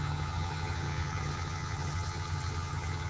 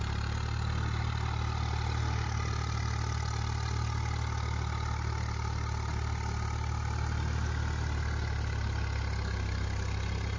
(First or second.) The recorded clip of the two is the second